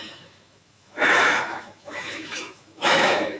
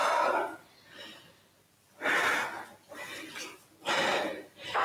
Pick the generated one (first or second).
first